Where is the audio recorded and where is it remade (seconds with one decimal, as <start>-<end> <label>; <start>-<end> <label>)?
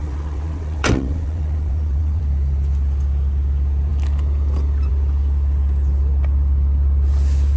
0.0-2.2 remade; 2.2-7.6 recorded